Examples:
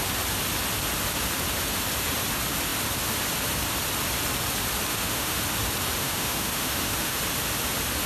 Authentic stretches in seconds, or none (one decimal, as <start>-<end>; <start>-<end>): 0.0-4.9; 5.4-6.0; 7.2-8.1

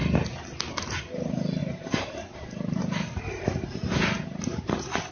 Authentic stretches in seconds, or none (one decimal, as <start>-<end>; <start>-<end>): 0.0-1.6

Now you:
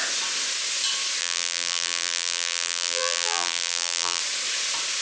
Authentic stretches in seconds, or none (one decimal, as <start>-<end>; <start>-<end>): 0.0-1.2; 4.2-5.0

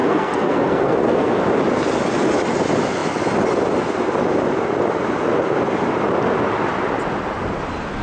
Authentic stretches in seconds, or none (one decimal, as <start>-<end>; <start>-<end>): 1.4-8.0

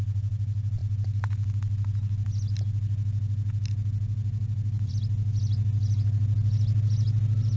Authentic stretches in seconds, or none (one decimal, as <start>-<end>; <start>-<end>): 0.0-7.6